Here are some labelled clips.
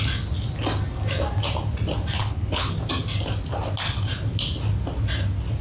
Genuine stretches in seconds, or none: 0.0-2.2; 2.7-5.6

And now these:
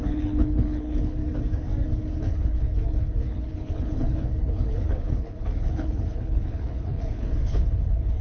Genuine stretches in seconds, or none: 1.2-2.2

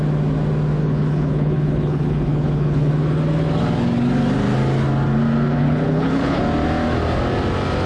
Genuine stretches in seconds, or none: 0.0-0.8; 2.9-5.6; 6.4-7.9

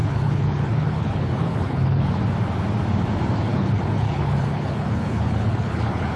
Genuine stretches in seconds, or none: 2.2-3.5

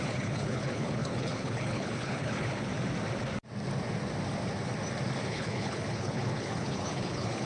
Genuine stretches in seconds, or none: 2.7-5.2

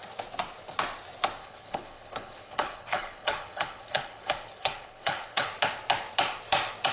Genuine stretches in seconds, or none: 0.0-1.4; 5.5-6.9

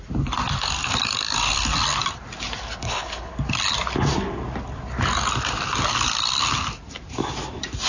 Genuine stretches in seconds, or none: 0.0-2.8; 3.3-7.9